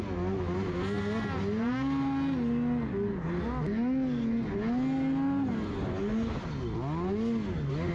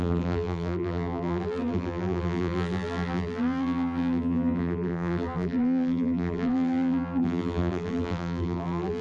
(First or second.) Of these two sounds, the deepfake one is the second